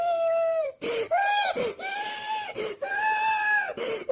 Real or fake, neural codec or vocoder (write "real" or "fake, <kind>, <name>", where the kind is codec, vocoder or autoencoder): fake, vocoder, BigVGAN v2